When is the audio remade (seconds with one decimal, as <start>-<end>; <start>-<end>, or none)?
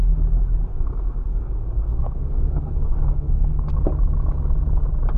0.7-3.8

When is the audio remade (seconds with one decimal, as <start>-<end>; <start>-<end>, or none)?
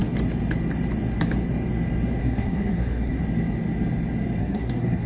2.2-3.2; 4.4-5.1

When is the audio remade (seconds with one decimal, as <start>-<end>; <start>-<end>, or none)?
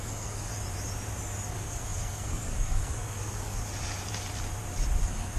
0.0-0.5; 1.5-3.6; 5.0-5.4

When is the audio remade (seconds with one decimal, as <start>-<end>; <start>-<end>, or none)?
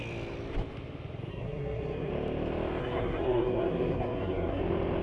1.3-2.1; 2.8-4.6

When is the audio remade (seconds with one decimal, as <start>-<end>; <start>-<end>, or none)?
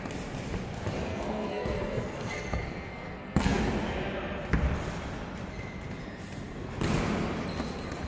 1.1-3.6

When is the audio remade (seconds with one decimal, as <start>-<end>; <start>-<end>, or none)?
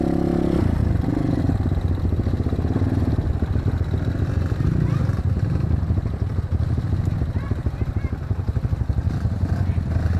none